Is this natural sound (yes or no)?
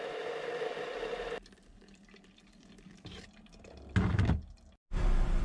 yes